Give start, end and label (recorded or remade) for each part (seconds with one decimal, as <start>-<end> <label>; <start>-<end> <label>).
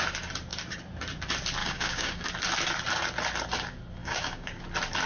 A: 0.0-1.6 recorded; 1.6-2.3 remade; 2.3-4.0 recorded; 4.0-4.6 remade; 4.6-5.1 recorded